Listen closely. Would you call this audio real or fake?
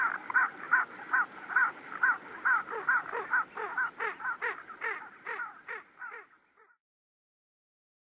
real